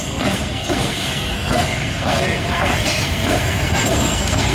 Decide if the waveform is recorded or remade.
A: remade